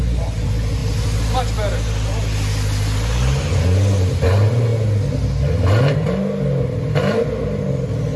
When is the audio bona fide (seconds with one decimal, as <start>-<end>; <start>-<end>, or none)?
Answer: 0.0-8.2